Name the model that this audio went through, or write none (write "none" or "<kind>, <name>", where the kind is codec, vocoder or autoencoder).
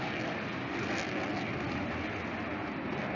none